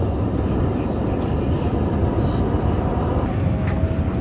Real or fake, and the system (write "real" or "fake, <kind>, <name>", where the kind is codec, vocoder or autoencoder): real